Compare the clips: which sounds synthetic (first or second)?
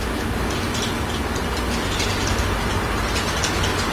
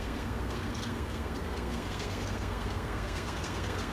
second